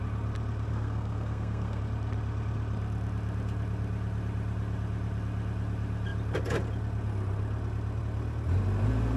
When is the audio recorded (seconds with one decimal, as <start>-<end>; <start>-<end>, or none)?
0.0-0.7; 1.8-9.2